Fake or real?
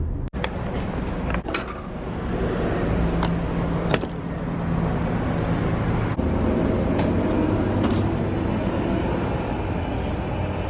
real